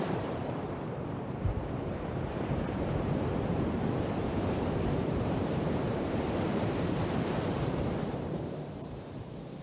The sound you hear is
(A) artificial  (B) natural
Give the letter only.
A